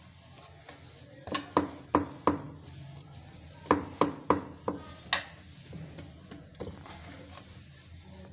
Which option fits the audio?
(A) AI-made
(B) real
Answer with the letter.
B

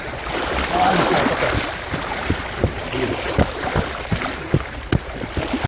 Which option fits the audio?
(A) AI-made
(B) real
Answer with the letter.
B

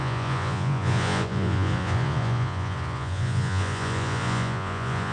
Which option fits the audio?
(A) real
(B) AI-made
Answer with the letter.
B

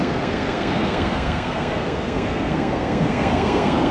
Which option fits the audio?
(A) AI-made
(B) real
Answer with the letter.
A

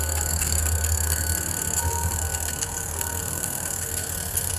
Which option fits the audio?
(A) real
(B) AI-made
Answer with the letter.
B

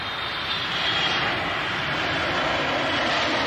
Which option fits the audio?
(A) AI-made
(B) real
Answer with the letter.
B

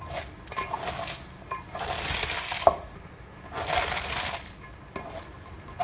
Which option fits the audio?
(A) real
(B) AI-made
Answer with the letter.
A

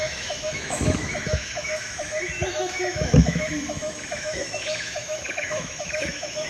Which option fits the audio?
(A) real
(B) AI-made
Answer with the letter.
B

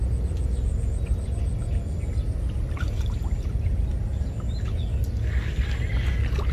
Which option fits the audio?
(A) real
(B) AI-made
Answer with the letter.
A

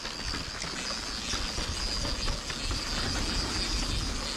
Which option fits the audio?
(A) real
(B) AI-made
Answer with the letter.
A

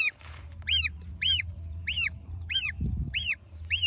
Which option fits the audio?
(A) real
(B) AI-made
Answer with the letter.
B